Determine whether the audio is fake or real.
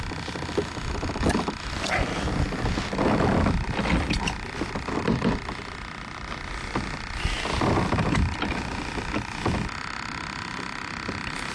real